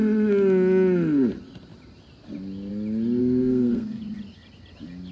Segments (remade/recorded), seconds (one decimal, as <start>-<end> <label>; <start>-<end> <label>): 0.0-3.2 recorded; 3.2-4.0 remade; 4.0-5.1 recorded